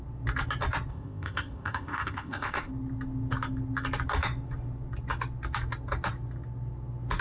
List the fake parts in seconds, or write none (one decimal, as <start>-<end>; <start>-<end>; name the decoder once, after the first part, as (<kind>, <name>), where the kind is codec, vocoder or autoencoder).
0.9-2.7 (codec, ZipCodec)